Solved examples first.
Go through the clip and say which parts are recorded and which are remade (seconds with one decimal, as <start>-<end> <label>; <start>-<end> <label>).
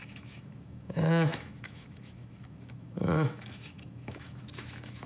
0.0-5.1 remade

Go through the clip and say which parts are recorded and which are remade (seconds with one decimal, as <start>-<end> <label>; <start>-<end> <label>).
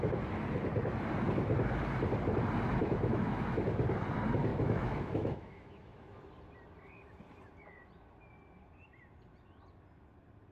0.0-2.8 recorded; 2.8-3.6 remade; 3.6-4.5 recorded; 4.5-6.2 remade; 6.2-10.5 recorded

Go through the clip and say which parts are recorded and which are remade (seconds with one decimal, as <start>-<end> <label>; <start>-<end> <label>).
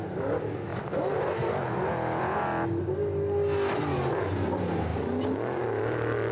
0.0-6.3 recorded